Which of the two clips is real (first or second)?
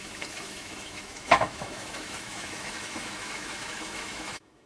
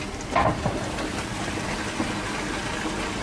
second